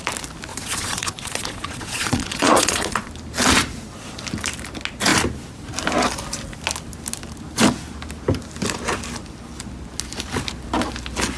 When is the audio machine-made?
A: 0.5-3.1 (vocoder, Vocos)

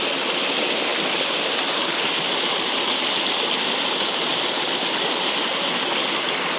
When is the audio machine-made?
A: 0.9-1.9 (vocoder, BigVGAN v2); 4.3-5.2

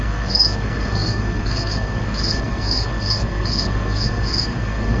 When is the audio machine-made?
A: 0.0-5.0 (codec, SNAC)